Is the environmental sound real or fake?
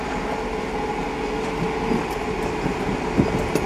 real